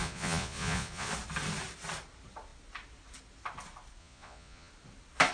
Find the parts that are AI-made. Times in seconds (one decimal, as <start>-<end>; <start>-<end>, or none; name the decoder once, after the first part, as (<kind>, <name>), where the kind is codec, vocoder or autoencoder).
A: 0.0-1.1 (vocoder, Vocos); 4.0-4.7